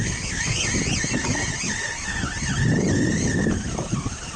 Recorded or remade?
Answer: recorded